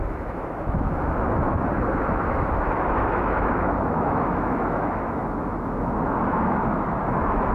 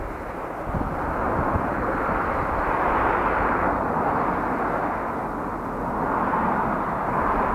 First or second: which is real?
second